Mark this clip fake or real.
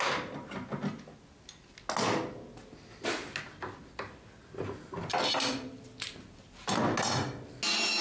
real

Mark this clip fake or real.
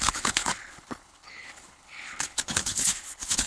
fake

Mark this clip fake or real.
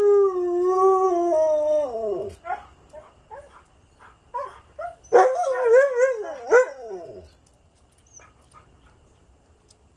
real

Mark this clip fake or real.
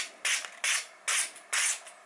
real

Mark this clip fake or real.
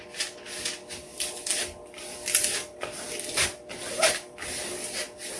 real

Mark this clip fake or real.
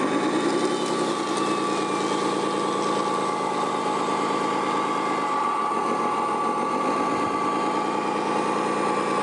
real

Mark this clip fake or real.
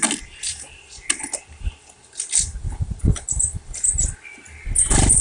real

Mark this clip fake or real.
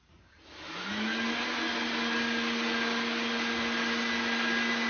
real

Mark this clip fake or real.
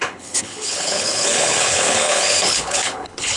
fake